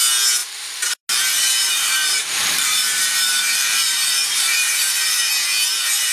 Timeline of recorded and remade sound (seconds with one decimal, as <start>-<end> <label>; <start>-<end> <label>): 0.0-0.4 recorded; 0.4-1.0 remade; 1.0-1.6 recorded; 1.6-5.3 remade; 5.3-6.1 recorded